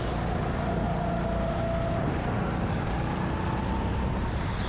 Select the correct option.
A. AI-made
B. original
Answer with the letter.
B